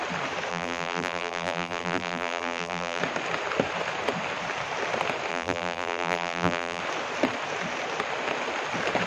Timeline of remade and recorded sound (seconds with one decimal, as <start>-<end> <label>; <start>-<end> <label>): 0.0-0.5 recorded; 0.5-3.0 remade; 3.0-5.3 recorded; 5.3-6.8 remade; 6.8-9.1 recorded

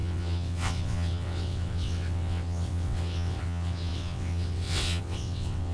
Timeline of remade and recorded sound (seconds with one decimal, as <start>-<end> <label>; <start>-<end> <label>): 0.0-5.7 remade